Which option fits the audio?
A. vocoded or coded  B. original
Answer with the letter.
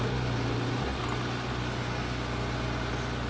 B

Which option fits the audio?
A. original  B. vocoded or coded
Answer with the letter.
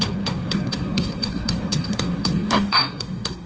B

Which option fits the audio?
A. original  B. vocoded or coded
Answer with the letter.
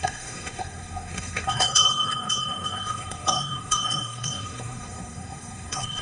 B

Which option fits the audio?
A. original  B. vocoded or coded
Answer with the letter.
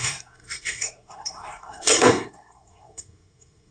B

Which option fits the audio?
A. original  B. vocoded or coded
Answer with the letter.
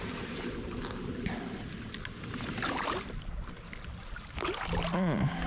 A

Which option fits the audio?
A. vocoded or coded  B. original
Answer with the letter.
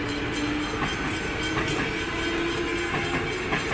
B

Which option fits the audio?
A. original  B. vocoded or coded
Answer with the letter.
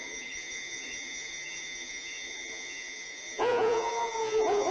B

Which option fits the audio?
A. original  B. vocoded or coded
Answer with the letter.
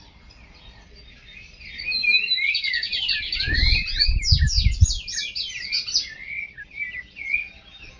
A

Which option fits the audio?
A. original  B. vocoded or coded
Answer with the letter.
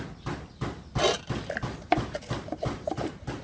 A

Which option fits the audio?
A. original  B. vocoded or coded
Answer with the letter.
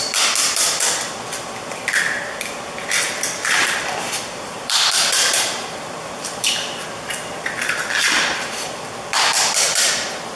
B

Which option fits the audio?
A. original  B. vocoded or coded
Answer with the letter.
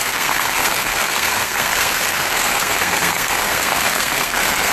B